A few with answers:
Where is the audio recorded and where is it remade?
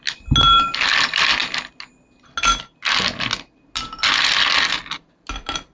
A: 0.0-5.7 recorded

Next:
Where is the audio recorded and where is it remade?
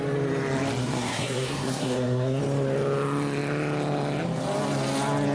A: 0.0-0.8 recorded; 0.8-2.4 remade; 2.4-5.3 recorded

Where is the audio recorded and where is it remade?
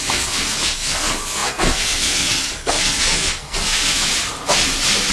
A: 0.0-4.1 remade; 4.1-5.1 recorded